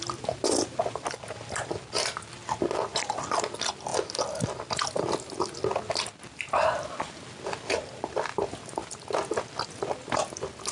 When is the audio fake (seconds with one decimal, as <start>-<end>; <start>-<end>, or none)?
none